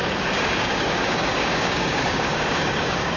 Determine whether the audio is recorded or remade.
remade